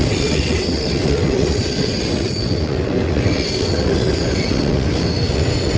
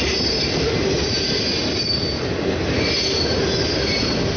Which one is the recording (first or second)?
second